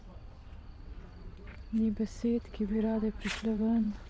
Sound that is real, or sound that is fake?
fake